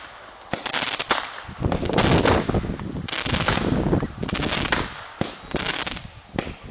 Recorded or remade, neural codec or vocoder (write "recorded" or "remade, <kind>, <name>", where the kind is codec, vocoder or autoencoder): recorded